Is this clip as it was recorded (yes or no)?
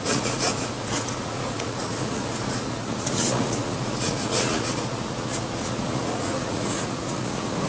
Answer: no